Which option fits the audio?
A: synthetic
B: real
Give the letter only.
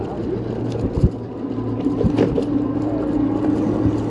B